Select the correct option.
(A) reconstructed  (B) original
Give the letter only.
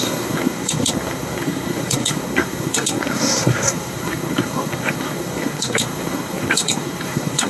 A